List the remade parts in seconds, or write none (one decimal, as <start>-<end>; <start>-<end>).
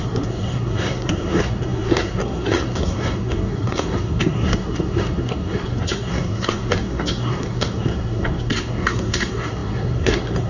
0.0-10.5